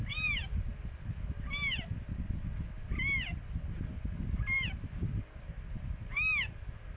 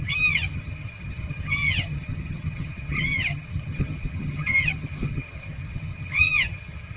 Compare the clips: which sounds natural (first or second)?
first